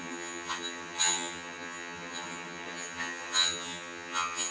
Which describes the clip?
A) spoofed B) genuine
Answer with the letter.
A